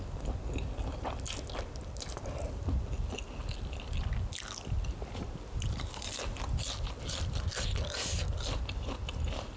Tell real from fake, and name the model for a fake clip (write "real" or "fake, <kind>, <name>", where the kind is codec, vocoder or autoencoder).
real